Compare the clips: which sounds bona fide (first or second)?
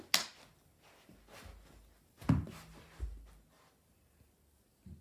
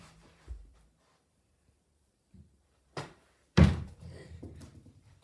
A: first